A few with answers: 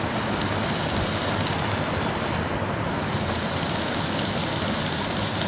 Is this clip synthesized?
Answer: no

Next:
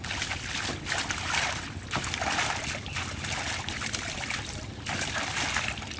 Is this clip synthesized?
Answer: no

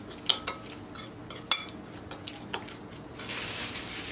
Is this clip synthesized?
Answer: no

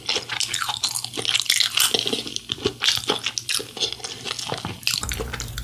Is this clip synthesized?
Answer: no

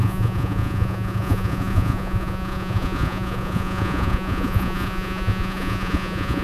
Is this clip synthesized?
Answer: yes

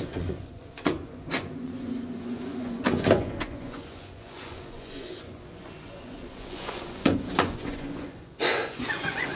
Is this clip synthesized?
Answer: yes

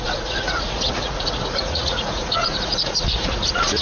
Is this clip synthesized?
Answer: yes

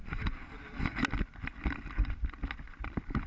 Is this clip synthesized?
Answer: no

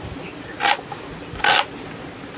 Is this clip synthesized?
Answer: no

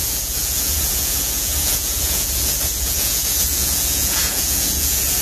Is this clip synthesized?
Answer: yes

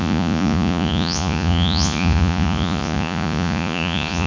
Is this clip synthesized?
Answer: yes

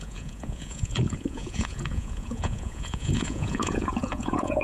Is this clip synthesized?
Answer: yes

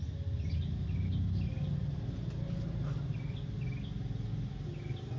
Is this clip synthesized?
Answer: no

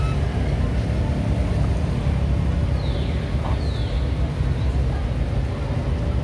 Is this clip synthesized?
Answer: no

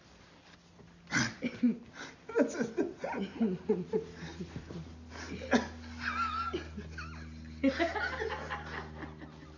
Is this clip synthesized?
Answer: no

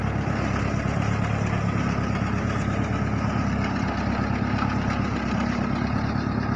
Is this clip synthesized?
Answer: no